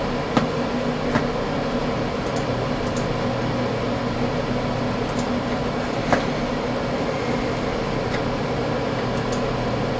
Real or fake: real